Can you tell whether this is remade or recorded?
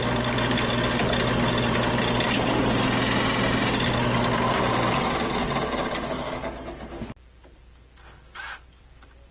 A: recorded